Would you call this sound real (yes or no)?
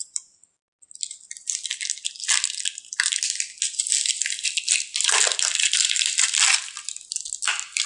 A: yes